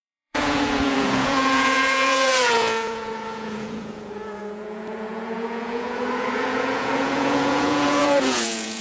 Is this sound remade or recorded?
remade